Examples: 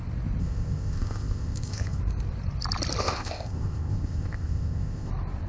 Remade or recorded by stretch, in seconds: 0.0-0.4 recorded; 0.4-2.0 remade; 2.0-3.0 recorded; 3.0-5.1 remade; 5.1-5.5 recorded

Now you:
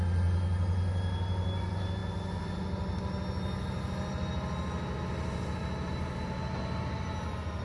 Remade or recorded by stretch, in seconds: 0.0-7.6 recorded